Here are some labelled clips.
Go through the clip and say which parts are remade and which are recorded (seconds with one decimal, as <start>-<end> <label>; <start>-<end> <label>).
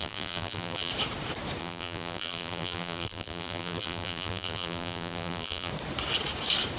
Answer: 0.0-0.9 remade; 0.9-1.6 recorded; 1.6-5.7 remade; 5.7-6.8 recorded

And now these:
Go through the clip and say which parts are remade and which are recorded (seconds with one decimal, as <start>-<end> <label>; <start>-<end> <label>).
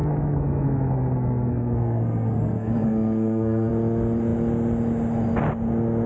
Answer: 0.0-3.7 remade; 3.7-6.1 recorded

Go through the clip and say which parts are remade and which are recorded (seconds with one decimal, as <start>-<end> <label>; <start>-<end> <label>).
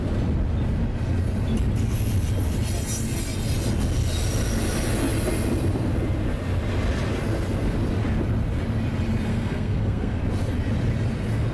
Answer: 0.0-9.3 recorded; 9.3-10.2 remade; 10.2-11.5 recorded